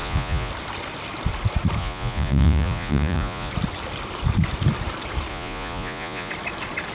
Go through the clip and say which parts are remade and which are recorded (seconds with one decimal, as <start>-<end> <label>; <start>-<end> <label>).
0.0-0.5 remade; 0.5-1.8 recorded; 1.8-3.5 remade; 3.5-5.3 recorded; 5.3-6.3 remade; 6.3-6.9 recorded